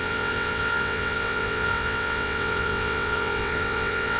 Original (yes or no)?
no